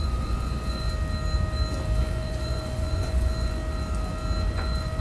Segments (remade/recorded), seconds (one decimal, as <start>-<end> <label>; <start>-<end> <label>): 0.0-0.9 remade; 0.9-2.0 recorded; 2.0-3.6 remade; 3.6-4.5 recorded; 4.5-5.0 remade